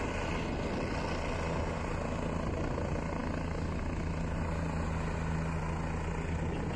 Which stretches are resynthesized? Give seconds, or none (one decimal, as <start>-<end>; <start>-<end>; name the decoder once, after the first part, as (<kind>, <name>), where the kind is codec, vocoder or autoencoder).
none